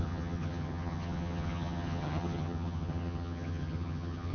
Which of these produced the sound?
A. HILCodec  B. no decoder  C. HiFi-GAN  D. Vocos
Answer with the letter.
C